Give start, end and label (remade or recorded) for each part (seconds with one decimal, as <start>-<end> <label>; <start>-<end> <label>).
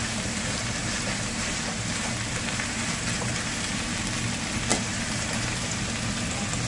0.0-4.0 remade; 4.0-4.7 recorded; 4.7-5.5 remade; 5.5-6.7 recorded